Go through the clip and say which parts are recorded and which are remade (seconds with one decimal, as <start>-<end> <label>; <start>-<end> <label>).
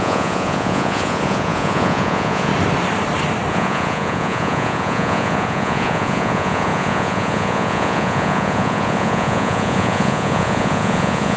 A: 0.0-2.5 remade; 2.5-3.5 recorded; 3.5-11.4 remade